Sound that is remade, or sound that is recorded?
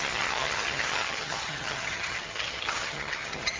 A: remade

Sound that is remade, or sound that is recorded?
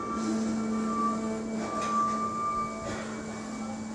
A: recorded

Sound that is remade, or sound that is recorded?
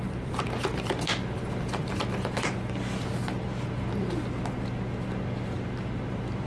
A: recorded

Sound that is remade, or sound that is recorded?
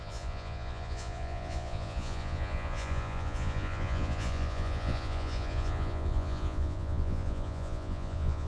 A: remade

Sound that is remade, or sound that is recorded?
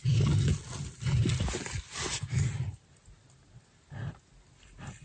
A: recorded